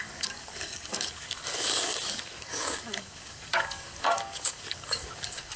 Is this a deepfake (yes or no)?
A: yes